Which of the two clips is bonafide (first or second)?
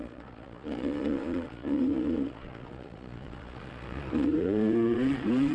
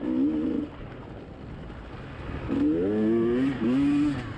second